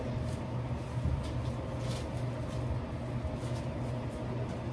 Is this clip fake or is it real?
real